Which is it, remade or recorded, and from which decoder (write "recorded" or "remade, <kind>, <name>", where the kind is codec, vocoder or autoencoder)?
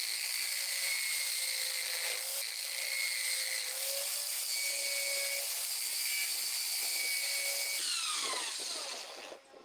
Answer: recorded